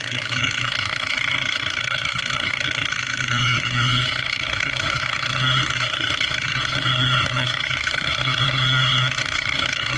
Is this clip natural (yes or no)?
no